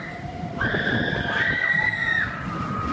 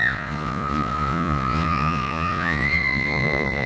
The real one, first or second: first